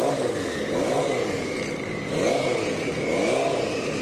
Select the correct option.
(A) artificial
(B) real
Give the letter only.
A